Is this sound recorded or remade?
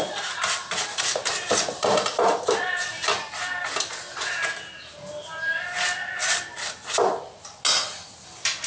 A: recorded